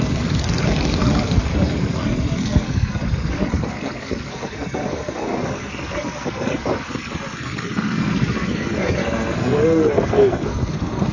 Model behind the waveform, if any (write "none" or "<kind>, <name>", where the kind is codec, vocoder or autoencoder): codec, SNAC